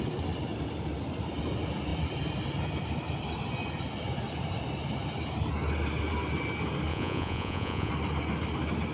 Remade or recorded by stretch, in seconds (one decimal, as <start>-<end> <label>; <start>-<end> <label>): 0.0-6.9 recorded; 6.9-7.9 remade; 7.9-8.9 recorded